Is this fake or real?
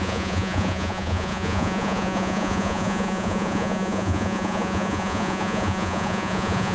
fake